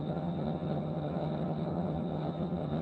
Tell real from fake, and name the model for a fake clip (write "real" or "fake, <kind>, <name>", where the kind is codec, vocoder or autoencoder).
fake, vocoder, HiFi-GAN